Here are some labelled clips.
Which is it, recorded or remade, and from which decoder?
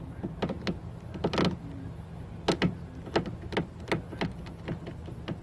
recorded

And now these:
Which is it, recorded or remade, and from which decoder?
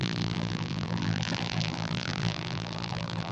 remade, vocoder, BigVGAN v2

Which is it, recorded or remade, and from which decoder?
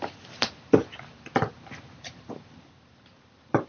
remade, vocoder, BigVGAN v2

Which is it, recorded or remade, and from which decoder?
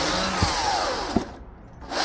remade, vocoder, BigVGAN v2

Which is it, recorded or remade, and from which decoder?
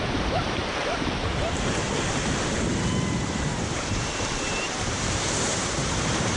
remade, vocoder, BigVGAN v2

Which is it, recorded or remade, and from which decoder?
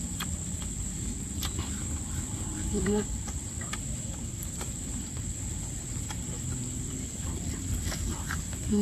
remade, vocoder, BigVGAN v2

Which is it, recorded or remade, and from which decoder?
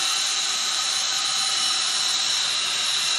remade, vocoder, BigVGAN v2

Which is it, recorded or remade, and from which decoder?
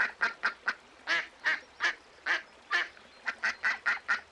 recorded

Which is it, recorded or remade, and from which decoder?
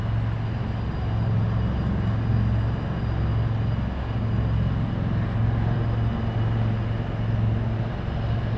recorded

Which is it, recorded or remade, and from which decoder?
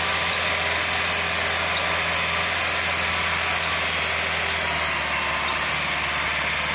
recorded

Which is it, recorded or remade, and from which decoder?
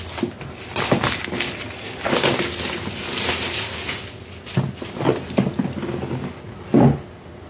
recorded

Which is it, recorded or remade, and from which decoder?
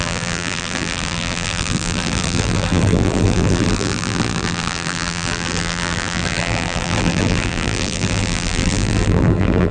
remade, vocoder, BigVGAN v2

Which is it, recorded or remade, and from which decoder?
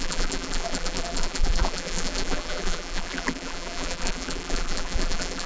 remade, vocoder, BigVGAN v2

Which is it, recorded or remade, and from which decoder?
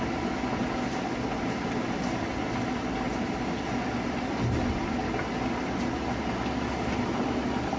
recorded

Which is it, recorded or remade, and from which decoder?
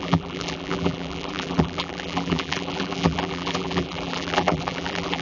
remade, vocoder, BigVGAN v2